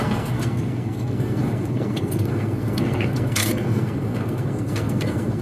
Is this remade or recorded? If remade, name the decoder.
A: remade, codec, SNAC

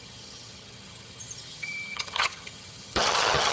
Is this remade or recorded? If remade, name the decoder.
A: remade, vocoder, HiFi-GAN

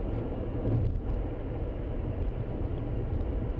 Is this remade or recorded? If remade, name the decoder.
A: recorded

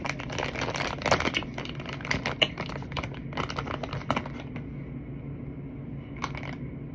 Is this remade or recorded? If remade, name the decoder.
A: recorded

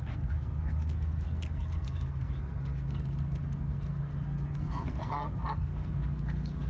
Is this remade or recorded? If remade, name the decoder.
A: remade, codec, SNAC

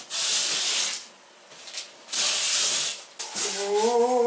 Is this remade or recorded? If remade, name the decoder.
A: recorded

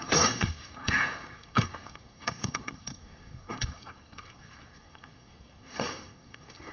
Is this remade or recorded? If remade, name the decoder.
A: remade, codec, SNAC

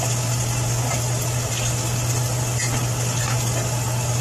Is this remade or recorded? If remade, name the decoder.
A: recorded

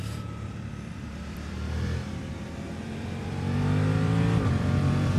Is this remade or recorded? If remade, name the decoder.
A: remade, vocoder, BigVGAN v2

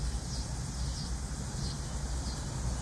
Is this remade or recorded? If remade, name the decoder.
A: recorded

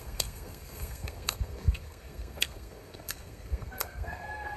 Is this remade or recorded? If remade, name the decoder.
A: remade, codec, SNAC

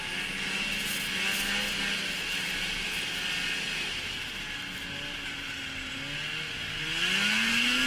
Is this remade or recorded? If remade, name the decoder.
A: recorded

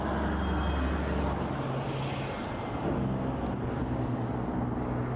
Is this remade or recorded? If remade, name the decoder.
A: recorded